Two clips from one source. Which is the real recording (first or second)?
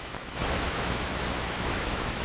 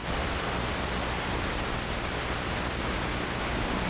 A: second